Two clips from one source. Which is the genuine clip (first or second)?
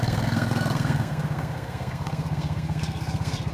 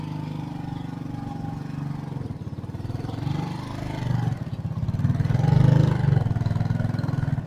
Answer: second